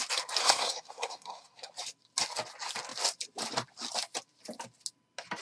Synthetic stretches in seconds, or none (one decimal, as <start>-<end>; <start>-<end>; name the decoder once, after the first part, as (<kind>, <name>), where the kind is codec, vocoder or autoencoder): 0.4-1.7 (codec, SNAC)